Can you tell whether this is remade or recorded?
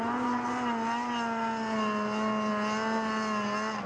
recorded